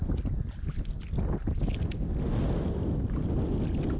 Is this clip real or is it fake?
real